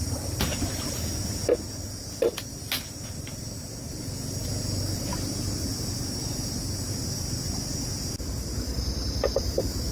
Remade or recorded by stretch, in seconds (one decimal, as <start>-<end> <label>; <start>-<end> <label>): 0.0-9.9 recorded